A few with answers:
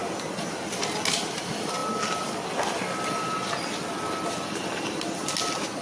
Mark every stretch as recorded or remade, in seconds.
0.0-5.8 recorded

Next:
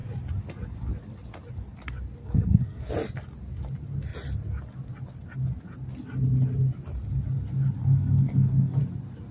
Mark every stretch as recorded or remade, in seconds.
0.0-2.2 recorded; 2.2-2.9 remade; 2.9-7.8 recorded; 7.8-8.8 remade; 8.8-9.3 recorded

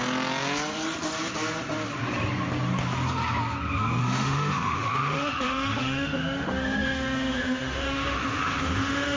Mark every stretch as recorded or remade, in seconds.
0.0-4.0 recorded; 4.0-9.2 remade

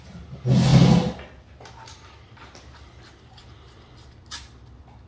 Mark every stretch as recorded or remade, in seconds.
0.0-5.1 recorded

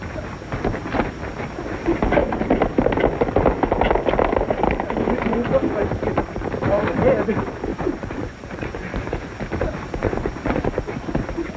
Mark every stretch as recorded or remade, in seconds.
0.0-7.7 recorded; 7.7-9.3 remade; 9.3-10.0 recorded; 10.0-10.8 remade; 10.8-11.6 recorded

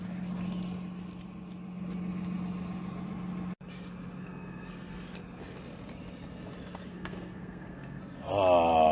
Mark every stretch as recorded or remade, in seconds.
0.0-4.2 recorded; 4.2-5.2 remade; 5.2-6.9 recorded; 6.9-8.0 remade; 8.0-8.9 recorded

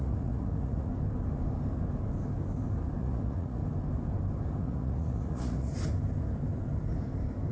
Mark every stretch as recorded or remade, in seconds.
0.0-0.9 remade; 0.9-3.0 recorded; 3.0-3.6 remade; 3.6-4.6 recorded; 4.6-5.7 remade; 5.7-7.5 recorded